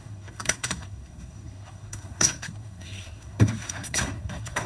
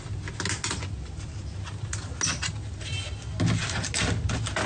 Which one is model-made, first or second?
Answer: first